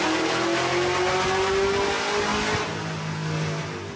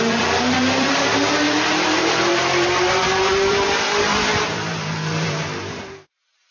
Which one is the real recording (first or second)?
first